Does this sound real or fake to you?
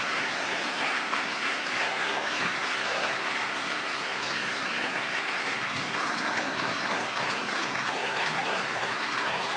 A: fake